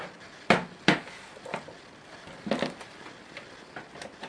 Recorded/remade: recorded